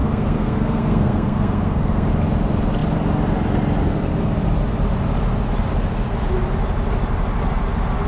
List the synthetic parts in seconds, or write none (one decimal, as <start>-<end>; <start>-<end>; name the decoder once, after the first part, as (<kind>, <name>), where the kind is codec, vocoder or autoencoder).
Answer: 0.0-2.1 (codec, SNAC)